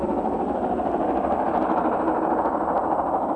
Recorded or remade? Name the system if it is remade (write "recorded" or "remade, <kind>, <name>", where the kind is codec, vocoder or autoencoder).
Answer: recorded